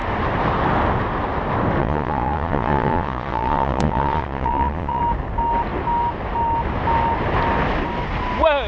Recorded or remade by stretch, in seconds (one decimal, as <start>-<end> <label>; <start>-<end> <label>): 0.0-1.8 recorded; 1.8-5.0 remade; 5.0-8.7 recorded